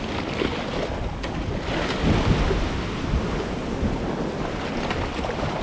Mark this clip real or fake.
real